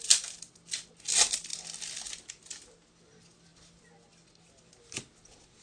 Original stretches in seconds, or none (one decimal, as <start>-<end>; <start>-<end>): 0.0-5.6